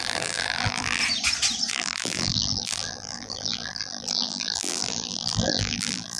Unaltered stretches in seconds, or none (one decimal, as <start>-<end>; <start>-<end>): 1.0-1.7